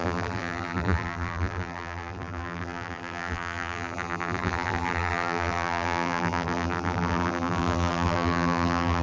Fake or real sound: fake